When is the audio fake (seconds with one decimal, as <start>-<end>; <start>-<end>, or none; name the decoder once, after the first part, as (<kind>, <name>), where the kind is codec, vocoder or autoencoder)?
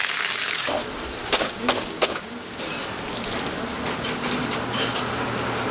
0.0-0.7 (codec, DAC); 1.2-2.6